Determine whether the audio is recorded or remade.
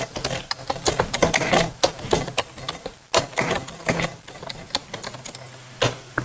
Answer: recorded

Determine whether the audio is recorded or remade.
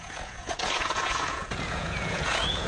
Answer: remade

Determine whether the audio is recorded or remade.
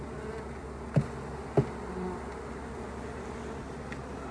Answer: recorded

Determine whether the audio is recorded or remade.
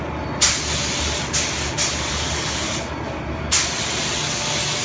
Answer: recorded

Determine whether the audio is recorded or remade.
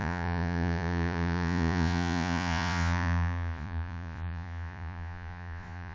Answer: remade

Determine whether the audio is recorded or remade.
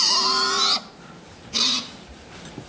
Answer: recorded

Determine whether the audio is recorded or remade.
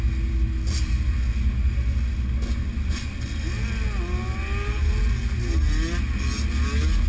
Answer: recorded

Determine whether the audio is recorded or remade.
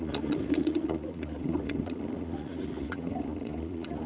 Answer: remade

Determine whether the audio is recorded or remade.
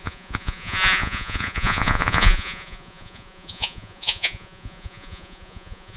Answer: remade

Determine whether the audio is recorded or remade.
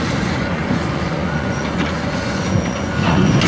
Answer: remade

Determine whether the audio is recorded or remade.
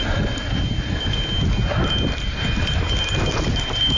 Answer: recorded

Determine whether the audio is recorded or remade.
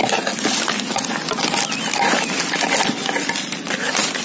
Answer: recorded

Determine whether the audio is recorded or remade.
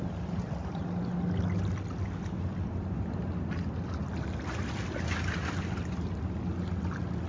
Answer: recorded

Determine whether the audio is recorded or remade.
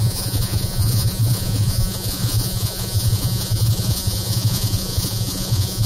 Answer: remade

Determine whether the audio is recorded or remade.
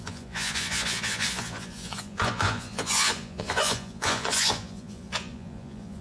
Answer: remade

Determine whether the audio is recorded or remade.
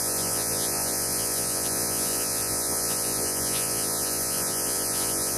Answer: remade